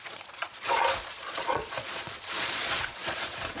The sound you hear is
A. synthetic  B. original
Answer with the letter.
A